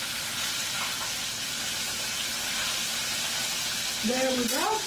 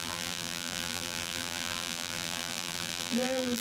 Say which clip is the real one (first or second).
first